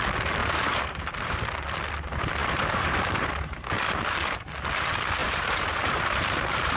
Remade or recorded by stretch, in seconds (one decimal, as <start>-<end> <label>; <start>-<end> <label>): 0.0-0.4 recorded; 0.4-1.4 remade; 1.4-2.4 recorded; 2.4-3.3 remade; 3.3-5.2 recorded; 5.2-6.8 remade